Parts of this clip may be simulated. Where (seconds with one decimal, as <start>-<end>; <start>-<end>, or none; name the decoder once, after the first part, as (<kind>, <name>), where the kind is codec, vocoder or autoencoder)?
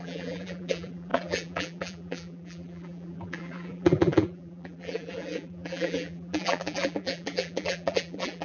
0.0-8.4 (vocoder, BigVGAN v2)